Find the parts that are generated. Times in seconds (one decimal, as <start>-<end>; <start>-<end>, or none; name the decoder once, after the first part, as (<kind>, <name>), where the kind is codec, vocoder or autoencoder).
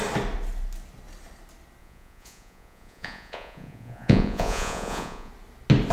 1.8-5.3 (vocoder, Vocos)